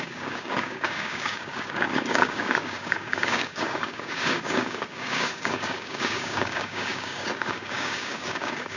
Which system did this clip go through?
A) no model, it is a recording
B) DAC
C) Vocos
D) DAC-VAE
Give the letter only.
B